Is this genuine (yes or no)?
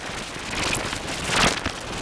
yes